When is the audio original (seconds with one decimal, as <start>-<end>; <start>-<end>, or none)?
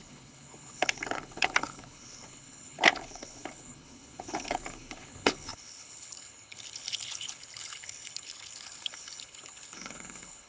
none